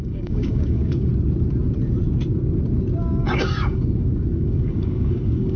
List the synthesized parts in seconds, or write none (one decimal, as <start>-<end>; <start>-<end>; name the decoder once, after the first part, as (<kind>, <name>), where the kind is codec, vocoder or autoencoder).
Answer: 0.0-1.1 (codec, DAC); 3.2-5.6